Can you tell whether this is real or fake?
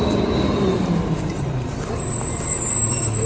fake